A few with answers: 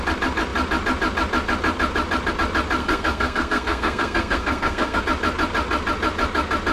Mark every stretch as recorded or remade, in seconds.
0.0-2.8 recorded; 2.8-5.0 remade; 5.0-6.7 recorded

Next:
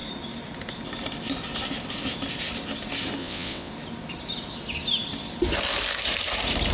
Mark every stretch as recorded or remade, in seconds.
0.0-3.2 recorded; 3.2-3.7 remade; 3.7-6.7 recorded

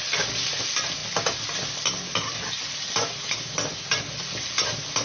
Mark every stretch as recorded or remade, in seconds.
0.0-5.0 recorded

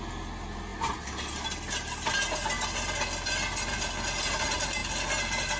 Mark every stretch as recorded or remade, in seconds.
0.0-5.6 recorded

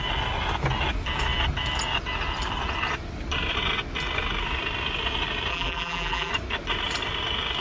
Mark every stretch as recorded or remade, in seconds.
0.0-5.5 recorded; 5.5-6.3 remade; 6.3-7.6 recorded